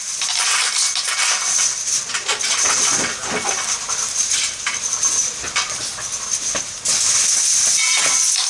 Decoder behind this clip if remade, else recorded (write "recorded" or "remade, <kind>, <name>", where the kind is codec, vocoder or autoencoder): recorded